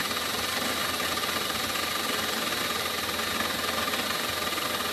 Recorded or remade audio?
recorded